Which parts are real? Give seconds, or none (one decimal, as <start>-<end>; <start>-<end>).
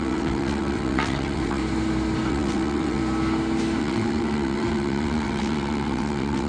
1.6-2.3; 3.0-3.8